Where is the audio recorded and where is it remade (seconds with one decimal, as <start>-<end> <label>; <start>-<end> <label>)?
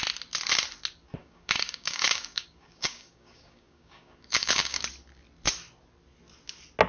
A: 0.0-1.2 recorded; 1.2-4.8 remade; 4.8-6.9 recorded